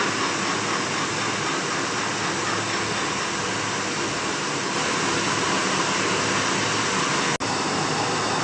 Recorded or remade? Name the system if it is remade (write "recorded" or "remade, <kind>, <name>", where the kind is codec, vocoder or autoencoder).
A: recorded